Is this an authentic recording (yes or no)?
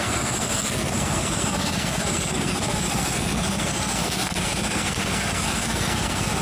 no